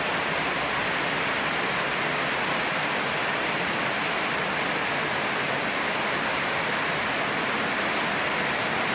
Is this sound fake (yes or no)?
no